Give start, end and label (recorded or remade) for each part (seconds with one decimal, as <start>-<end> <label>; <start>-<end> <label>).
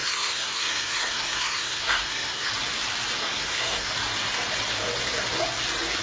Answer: 0.0-2.5 remade; 2.5-3.2 recorded; 3.2-3.9 remade; 3.9-6.0 recorded